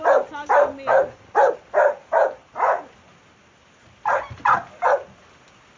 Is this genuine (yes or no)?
yes